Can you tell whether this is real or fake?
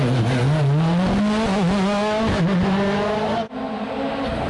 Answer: real